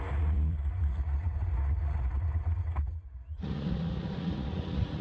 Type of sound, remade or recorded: remade